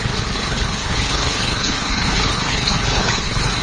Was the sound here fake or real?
fake